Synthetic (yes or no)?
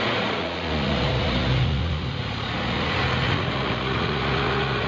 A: yes